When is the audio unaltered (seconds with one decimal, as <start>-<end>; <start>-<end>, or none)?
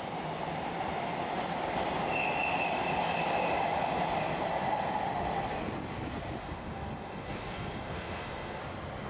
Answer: 0.0-6.4; 8.6-9.1